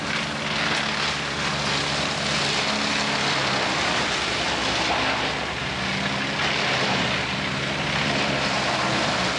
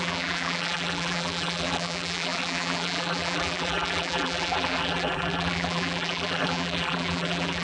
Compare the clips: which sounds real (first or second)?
first